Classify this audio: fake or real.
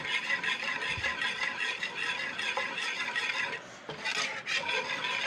real